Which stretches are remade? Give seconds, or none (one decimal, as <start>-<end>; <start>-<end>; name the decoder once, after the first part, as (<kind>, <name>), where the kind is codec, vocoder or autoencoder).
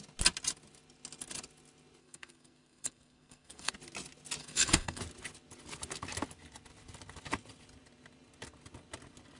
2.0-3.7 (codec, SNAC); 4.4-5.0